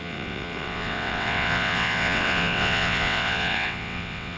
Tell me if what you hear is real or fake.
fake